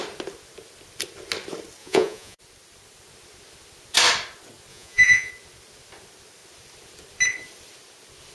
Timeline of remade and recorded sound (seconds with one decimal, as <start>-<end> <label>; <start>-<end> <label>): 0.0-1.8 recorded; 1.8-2.4 remade; 2.4-4.7 recorded; 4.7-5.3 remade; 5.3-8.3 recorded